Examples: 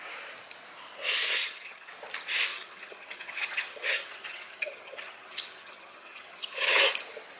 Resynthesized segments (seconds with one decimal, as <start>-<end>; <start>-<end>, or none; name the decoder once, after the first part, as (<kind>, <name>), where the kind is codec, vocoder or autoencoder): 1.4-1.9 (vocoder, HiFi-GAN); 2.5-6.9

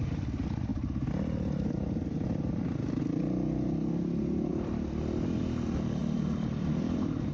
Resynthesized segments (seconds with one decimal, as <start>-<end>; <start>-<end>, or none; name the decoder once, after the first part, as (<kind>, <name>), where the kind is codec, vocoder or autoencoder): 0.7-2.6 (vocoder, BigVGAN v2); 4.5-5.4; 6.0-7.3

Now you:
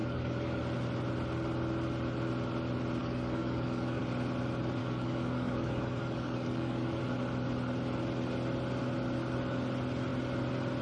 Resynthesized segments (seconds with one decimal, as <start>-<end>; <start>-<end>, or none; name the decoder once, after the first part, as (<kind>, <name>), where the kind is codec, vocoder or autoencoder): 0.0-0.6 (codec, DAC); 3.0-4.0; 4.8-7.0

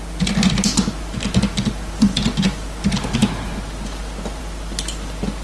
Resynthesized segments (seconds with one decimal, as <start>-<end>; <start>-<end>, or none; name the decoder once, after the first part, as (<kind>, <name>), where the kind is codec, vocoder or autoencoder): none

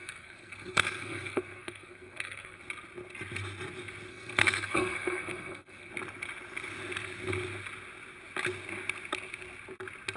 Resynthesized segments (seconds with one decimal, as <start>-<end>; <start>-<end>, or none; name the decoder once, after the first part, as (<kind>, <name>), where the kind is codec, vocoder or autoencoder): 0.0-2.6 (codec, SNAC); 4.1-5.9